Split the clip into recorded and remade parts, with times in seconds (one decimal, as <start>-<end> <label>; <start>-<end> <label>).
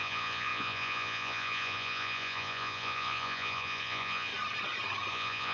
0.0-4.3 remade; 4.3-5.1 recorded; 5.1-5.5 remade